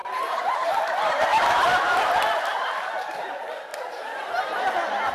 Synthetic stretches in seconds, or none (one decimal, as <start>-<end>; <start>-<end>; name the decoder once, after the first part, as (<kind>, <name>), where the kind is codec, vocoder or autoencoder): 0.0-2.2 (vocoder, BigVGAN v2); 3.7-4.6